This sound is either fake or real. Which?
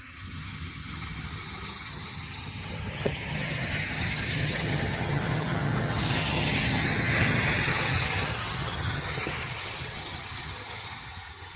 fake